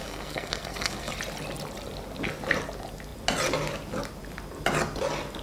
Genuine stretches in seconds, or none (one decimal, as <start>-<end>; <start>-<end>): 1.1-5.4